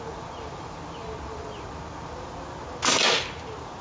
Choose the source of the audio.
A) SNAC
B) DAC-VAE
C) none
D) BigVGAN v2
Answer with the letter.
C